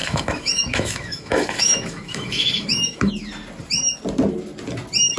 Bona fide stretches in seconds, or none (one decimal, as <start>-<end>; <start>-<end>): 3.1-5.2